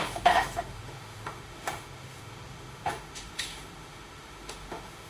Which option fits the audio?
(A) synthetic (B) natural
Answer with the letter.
A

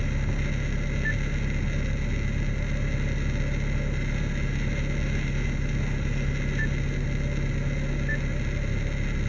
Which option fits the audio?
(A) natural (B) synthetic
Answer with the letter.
A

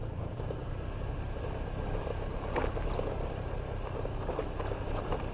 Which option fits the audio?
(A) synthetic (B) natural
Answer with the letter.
B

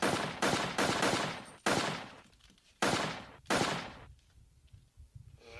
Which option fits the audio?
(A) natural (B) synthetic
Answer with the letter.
B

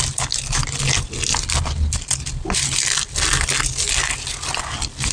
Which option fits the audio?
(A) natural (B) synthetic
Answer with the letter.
A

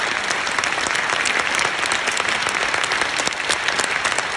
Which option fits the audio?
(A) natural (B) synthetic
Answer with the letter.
A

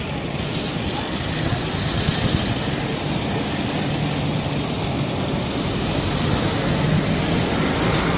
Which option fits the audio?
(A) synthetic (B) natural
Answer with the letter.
B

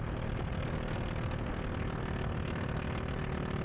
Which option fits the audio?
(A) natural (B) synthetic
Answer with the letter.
A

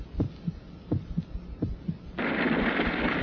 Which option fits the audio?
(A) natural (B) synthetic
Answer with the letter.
A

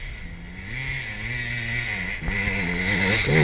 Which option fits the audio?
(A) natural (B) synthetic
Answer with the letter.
A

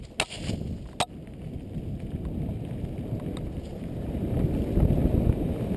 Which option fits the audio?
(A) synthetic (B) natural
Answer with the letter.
B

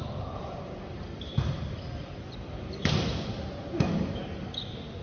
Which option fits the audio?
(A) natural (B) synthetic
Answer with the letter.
A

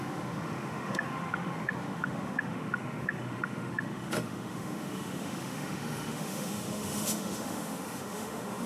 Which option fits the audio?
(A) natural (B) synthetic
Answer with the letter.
B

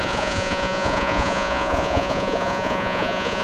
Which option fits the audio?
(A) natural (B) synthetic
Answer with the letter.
B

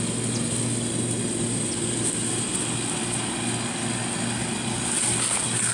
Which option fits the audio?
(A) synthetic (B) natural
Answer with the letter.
B